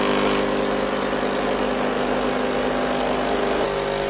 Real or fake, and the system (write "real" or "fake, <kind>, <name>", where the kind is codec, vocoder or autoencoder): real